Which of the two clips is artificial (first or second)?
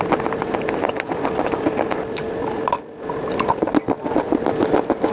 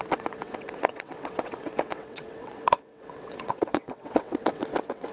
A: second